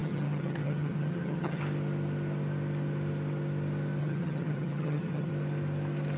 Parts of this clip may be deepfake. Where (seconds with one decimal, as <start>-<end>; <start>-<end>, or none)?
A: 0.0-1.6; 4.0-5.3